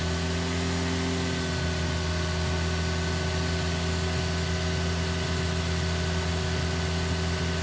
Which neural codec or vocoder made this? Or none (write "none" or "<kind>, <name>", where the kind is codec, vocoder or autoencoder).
none